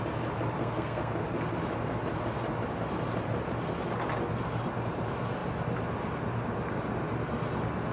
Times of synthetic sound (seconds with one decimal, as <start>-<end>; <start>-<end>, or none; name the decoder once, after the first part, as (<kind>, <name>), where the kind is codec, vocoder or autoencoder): 0.6-1.1 (codec, SNAC)